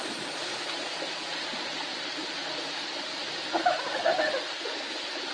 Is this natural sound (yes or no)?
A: yes